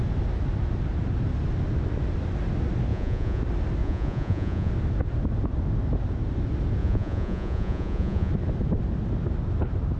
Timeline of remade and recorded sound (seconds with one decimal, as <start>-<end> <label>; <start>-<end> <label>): 0.0-2.9 recorded; 2.9-3.4 remade; 3.4-3.8 recorded; 3.8-4.7 remade; 4.7-6.8 recorded; 6.8-8.3 remade; 8.3-10.0 recorded

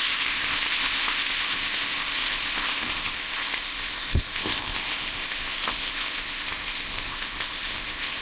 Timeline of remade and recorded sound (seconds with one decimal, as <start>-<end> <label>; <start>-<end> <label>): 0.0-8.2 remade

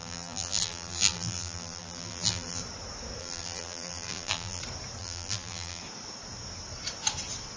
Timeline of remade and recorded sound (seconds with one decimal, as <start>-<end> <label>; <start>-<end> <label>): 0.0-2.6 remade; 2.6-3.2 recorded; 3.2-4.6 remade; 4.6-5.0 recorded; 5.0-5.8 remade; 5.8-7.6 recorded